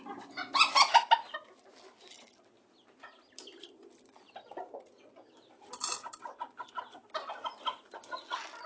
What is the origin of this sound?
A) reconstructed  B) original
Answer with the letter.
B